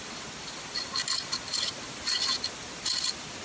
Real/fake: real